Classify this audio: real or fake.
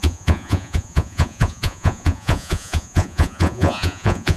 fake